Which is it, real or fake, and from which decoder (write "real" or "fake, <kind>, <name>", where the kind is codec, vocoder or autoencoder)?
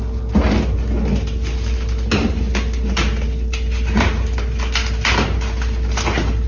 real